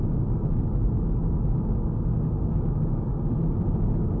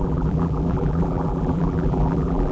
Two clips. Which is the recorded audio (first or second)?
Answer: first